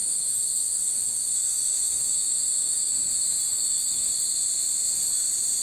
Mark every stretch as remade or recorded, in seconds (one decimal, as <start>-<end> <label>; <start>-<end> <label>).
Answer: 0.0-3.1 remade; 3.1-3.5 recorded; 3.5-4.1 remade; 4.1-5.6 recorded